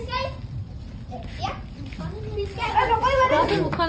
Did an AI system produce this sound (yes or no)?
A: no